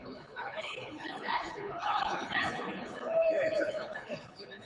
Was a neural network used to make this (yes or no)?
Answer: yes